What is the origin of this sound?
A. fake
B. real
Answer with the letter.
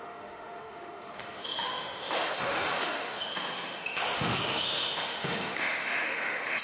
A